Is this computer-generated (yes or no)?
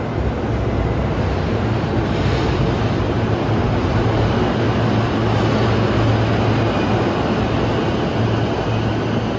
no